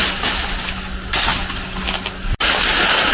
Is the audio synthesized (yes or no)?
no